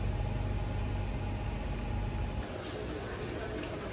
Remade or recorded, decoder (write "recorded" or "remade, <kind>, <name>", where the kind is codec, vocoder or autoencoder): recorded